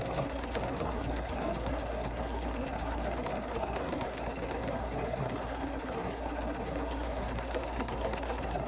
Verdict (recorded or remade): remade